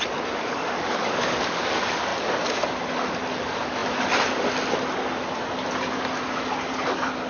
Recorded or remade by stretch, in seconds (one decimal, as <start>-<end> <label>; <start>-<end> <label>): 0.0-0.4 recorded; 0.4-1.6 remade; 1.6-7.3 recorded